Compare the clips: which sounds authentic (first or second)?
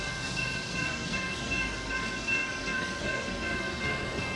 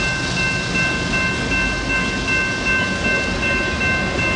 second